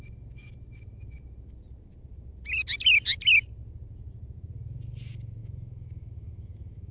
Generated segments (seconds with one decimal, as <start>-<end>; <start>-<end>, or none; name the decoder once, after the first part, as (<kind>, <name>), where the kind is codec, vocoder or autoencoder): 5.4-6.9 (autoencoder, DAC-VAE)